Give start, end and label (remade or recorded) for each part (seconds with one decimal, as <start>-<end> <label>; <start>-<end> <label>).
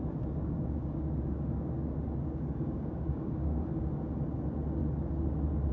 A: 0.0-0.4 recorded; 0.4-3.8 remade; 3.8-5.7 recorded